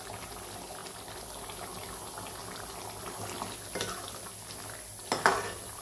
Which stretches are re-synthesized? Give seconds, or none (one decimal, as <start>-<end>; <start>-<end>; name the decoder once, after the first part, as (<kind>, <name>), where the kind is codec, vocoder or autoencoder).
none